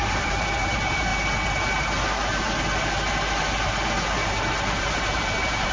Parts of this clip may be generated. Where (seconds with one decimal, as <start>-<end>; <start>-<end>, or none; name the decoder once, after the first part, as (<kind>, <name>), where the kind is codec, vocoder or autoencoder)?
0.0-1.1 (vocoder, BigVGAN v2); 4.5-5.7